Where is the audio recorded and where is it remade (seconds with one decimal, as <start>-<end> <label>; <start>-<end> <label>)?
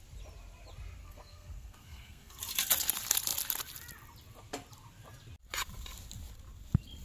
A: 0.0-1.0 recorded; 1.0-2.4 remade; 2.4-7.0 recorded